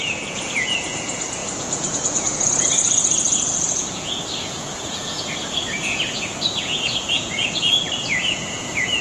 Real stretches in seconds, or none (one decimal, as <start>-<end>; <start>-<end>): none